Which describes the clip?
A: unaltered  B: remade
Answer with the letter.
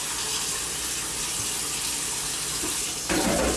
A